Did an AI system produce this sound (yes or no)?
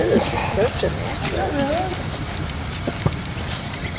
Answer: no